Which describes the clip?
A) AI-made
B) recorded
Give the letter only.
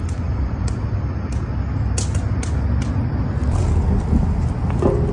B